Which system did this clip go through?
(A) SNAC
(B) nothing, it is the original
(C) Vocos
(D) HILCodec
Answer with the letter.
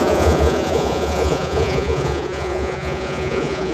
C